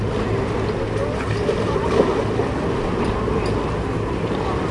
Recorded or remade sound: recorded